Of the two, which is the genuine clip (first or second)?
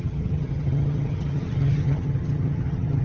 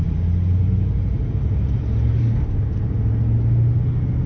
second